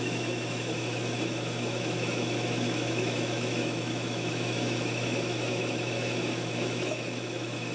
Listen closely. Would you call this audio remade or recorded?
remade